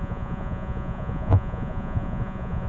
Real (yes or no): no